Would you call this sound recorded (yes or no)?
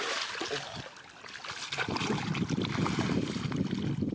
yes